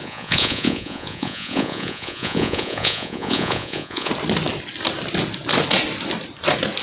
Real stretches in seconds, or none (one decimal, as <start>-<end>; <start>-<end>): 4.1-6.8